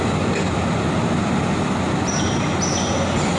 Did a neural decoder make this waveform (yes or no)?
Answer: no